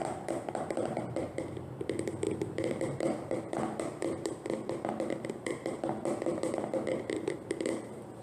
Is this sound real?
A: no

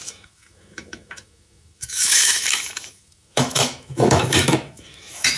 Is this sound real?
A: no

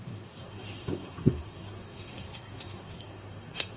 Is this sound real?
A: no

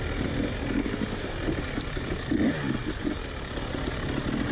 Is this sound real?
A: yes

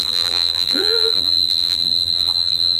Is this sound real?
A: no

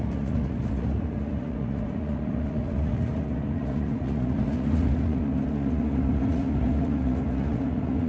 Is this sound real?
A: no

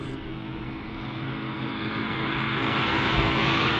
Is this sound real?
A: no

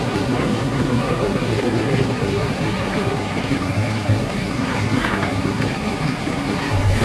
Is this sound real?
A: no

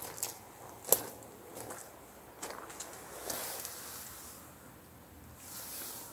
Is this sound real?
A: yes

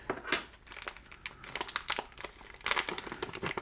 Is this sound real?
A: yes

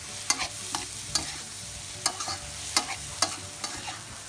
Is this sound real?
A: yes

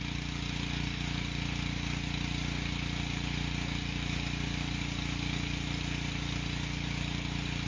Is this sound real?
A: yes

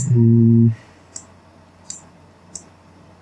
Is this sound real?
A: yes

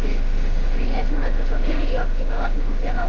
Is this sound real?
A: no